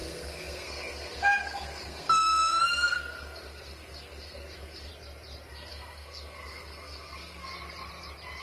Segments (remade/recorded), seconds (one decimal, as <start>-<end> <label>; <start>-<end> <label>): 0.0-4.9 remade; 4.9-5.5 recorded; 5.5-7.5 remade; 7.5-8.4 recorded